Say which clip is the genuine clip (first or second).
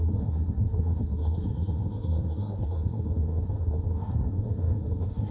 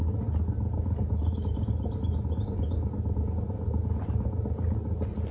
second